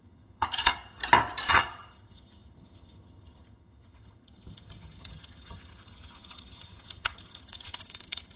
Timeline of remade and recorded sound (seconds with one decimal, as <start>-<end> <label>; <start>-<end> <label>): 0.0-1.0 remade; 1.0-1.5 recorded; 1.5-8.4 remade

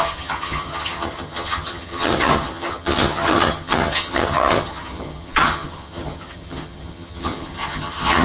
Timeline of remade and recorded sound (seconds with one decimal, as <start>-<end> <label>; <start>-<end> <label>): 0.0-8.2 remade

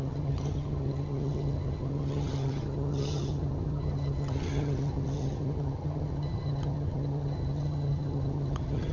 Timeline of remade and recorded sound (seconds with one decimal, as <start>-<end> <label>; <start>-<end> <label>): 0.0-8.9 remade

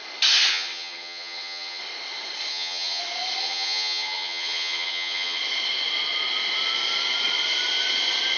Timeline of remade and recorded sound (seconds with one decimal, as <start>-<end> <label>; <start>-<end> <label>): 0.0-0.5 recorded; 0.5-1.8 remade; 1.8-2.5 recorded; 2.5-3.0 remade; 3.0-3.4 recorded; 3.4-5.4 remade; 5.4-8.4 recorded

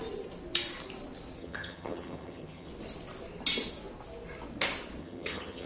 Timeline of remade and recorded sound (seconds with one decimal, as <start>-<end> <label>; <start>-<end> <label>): 0.0-1.4 recorded; 1.4-2.7 remade; 2.7-5.0 recorded; 5.0-5.7 remade

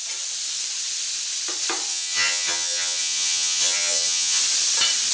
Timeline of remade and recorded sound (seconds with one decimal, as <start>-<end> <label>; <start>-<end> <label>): 0.0-1.9 recorded; 1.9-4.4 remade; 4.4-5.1 recorded